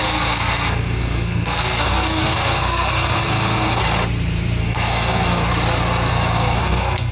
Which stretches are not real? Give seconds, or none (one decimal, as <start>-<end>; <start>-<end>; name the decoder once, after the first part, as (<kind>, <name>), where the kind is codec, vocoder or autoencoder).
0.0-3.8 (codec, SNAC); 4.6-5.5; 6.1-7.1